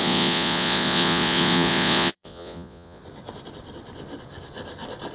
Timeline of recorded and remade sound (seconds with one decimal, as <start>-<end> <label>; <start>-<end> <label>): 0.0-3.0 remade; 3.0-5.1 recorded